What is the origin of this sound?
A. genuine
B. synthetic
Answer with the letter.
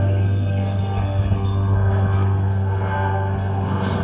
B